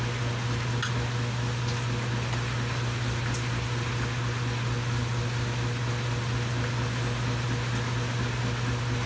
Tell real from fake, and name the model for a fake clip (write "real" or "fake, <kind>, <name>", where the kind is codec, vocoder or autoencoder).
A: real